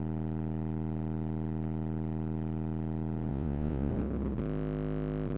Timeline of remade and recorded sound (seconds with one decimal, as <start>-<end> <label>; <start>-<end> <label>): 0.0-3.3 recorded; 3.3-3.9 remade; 3.9-5.4 recorded